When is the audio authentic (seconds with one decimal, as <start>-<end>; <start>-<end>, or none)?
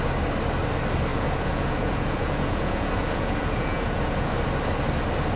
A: 0.0-1.1; 4.3-5.4